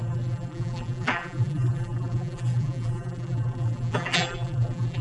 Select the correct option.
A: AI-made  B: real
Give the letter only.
A